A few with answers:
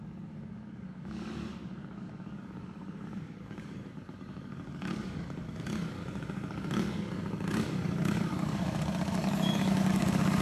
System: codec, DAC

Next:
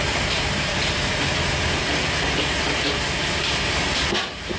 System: none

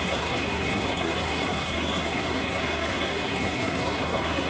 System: codec, SNAC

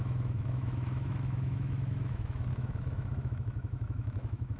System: autoencoder, DAC-VAE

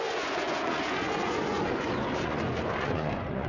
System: vocoder, Vocos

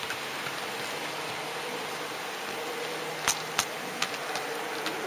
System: none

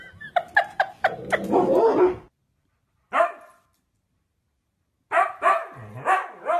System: none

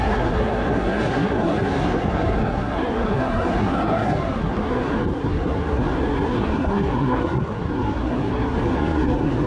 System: codec, SNAC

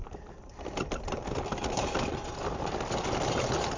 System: none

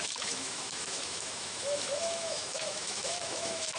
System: autoencoder, DAC-VAE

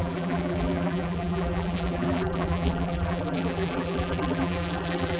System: vocoder, BigVGAN v2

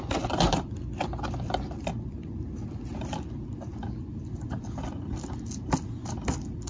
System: none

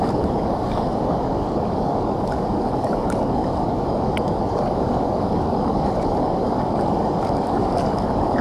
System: codec, DAC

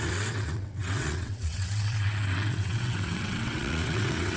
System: vocoder, WaveNeXt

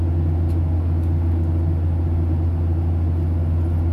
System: none